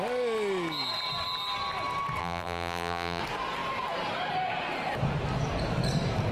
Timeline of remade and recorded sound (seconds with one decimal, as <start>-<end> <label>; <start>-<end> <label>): 0.0-2.2 recorded; 2.2-3.2 remade; 3.2-6.3 recorded